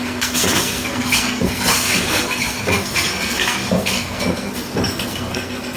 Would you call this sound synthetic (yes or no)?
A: yes